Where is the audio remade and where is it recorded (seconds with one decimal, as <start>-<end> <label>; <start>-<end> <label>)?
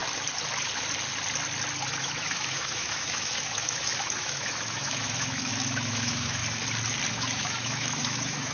0.0-2.0 recorded; 2.0-6.4 remade; 6.4-7.1 recorded; 7.1-8.5 remade